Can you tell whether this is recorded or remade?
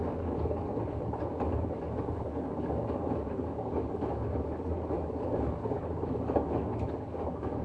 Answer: remade